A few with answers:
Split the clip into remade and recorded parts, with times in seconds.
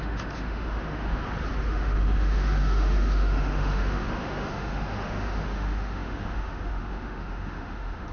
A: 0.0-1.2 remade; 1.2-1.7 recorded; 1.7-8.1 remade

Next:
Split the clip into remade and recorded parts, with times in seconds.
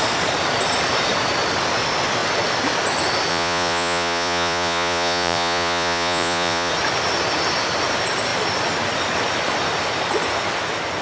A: 0.0-3.3 recorded; 3.3-6.7 remade; 6.7-11.0 recorded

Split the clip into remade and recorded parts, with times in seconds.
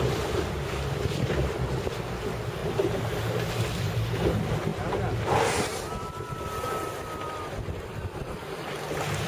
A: 0.0-2.6 remade; 2.6-3.5 recorded; 3.5-4.7 remade; 4.7-6.6 recorded; 6.6-9.3 remade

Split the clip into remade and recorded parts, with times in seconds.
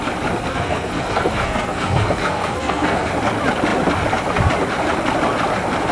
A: 0.0-0.5 recorded; 0.5-3.1 remade; 3.1-5.9 recorded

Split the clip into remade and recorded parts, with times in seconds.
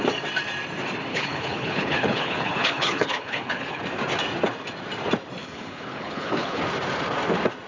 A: 0.0-1.1 recorded; 1.1-3.8 remade; 3.8-5.4 recorded; 5.4-6.6 remade; 6.6-7.7 recorded